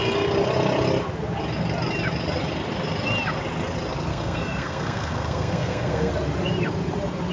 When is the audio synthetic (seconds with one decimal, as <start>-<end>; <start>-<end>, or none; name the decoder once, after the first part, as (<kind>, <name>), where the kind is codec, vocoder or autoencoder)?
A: 4.1-6.1 (codec, SNAC)